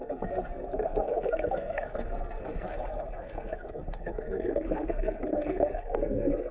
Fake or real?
fake